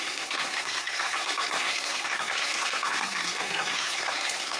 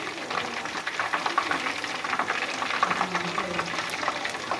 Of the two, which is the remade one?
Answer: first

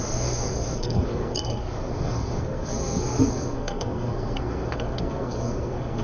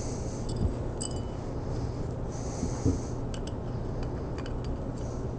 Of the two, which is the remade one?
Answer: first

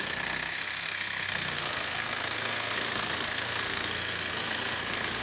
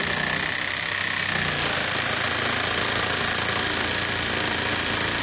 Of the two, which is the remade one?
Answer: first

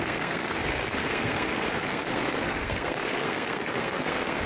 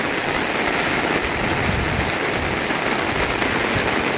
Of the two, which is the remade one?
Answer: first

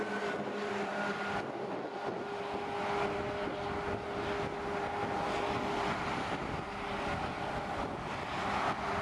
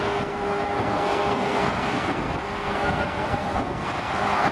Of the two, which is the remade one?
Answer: second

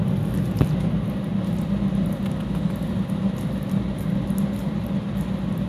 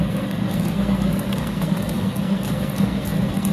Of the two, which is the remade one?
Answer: second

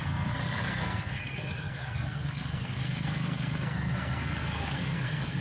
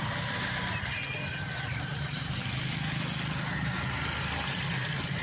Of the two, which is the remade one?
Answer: first